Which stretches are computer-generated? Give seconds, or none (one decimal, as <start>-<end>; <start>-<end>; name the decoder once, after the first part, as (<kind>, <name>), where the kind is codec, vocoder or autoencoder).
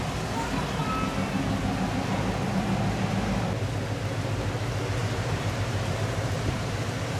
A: 5.0-6.8 (vocoder, BigVGAN v2)